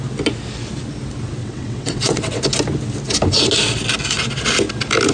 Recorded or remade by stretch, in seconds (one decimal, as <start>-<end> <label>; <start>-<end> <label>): 0.0-1.4 recorded; 1.4-2.4 remade; 2.4-5.1 recorded